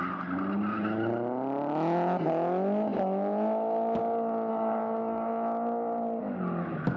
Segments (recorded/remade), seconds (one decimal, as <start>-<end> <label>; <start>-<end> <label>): 0.0-4.5 recorded; 4.5-5.3 remade; 5.3-7.0 recorded